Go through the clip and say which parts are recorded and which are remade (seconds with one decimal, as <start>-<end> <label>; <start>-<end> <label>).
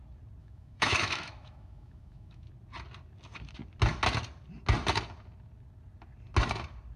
0.0-0.4 recorded; 0.4-2.5 remade; 2.5-7.0 recorded